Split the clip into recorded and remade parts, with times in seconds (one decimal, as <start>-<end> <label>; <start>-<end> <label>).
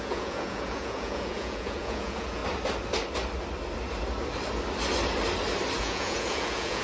0.0-2.4 remade; 2.4-5.8 recorded; 5.8-6.8 remade